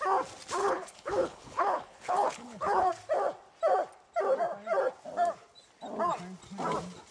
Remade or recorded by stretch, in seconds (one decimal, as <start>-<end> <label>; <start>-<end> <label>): 0.0-0.6 recorded; 0.6-2.9 remade; 2.9-7.1 recorded